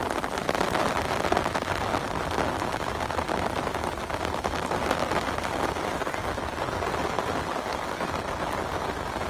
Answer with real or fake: real